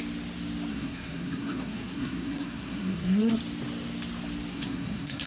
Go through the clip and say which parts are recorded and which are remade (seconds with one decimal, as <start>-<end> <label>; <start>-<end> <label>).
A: 0.0-0.7 recorded; 0.7-3.3 remade; 3.3-4.5 recorded; 4.5-5.3 remade